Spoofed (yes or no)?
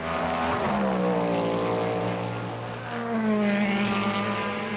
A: no